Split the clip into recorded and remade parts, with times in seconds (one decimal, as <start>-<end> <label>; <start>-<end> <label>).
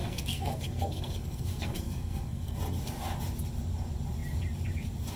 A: 0.0-2.6 remade; 2.6-5.2 recorded